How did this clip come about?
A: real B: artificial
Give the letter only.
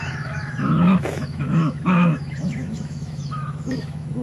B